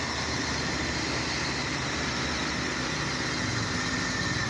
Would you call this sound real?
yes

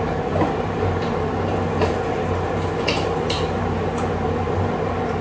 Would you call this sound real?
no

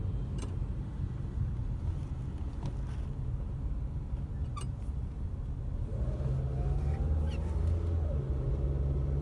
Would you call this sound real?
yes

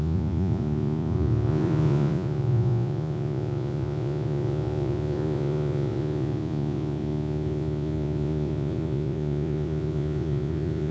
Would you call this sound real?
no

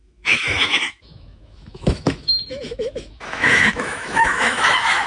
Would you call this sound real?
no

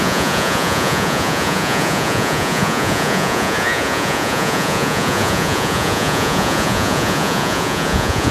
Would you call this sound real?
no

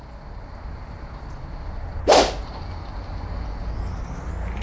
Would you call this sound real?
yes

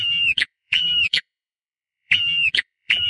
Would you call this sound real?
no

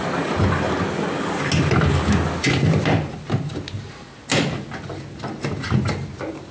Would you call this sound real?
yes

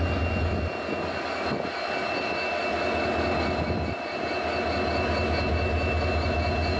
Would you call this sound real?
yes